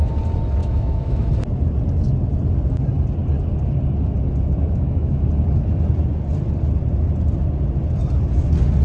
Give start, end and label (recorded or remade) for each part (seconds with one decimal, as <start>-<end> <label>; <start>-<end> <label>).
0.0-0.6 recorded; 0.6-1.3 remade; 1.3-4.6 recorded; 4.6-5.3 remade; 5.3-8.8 recorded